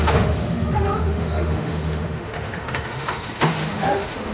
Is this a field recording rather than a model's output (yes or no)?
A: no